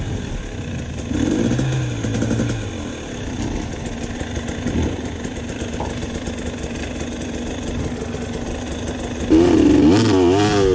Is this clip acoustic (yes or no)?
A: yes